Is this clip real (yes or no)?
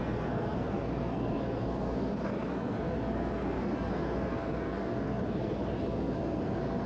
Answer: no